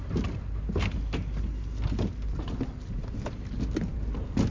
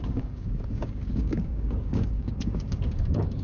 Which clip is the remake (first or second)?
second